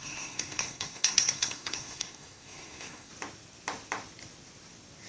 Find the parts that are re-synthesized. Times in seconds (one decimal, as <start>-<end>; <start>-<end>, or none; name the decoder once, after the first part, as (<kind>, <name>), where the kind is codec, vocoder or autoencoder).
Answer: 0.0-3.1 (codec, SNAC)